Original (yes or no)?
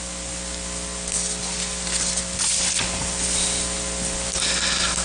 yes